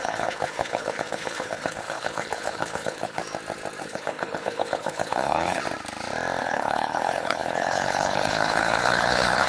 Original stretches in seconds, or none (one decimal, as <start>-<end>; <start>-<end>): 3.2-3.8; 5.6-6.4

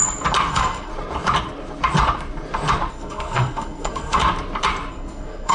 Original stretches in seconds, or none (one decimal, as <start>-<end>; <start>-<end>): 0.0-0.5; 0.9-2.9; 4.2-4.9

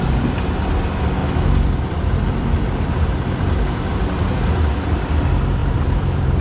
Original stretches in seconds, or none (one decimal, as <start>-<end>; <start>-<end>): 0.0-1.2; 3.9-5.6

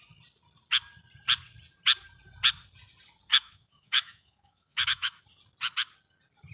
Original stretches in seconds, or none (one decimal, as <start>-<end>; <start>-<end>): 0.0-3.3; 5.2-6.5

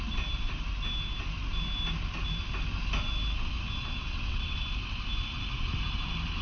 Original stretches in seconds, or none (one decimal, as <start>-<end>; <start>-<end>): 0.0-4.0; 4.6-6.4